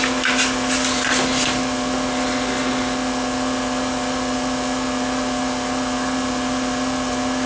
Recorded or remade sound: recorded